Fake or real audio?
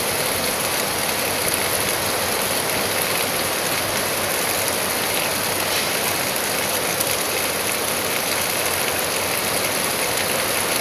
real